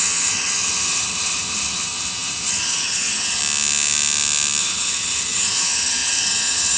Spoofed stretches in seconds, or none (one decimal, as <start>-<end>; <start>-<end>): 0.0-3.4; 4.6-6.8